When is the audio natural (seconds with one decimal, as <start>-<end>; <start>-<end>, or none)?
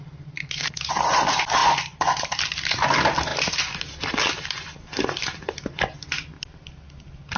0.0-0.4; 0.9-7.4